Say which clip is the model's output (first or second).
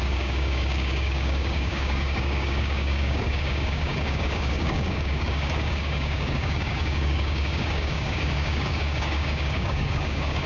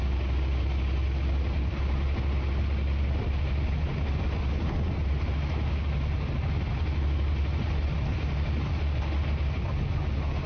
first